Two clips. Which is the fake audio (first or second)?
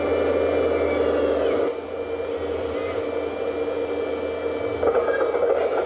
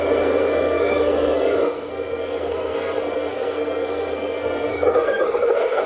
second